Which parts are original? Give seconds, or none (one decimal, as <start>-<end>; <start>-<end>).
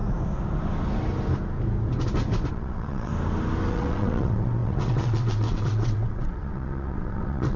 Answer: 0.0-2.5; 3.1-3.7